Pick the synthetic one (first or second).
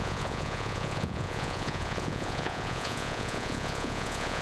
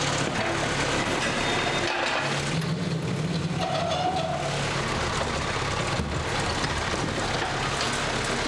first